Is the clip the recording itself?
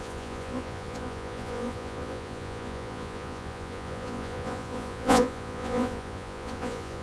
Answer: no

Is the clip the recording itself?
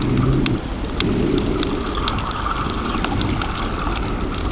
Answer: yes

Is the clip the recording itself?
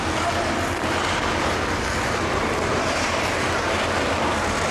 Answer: yes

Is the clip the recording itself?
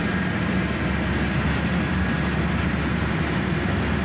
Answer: yes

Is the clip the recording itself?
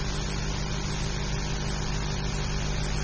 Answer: yes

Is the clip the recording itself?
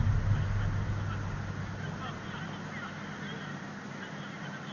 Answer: yes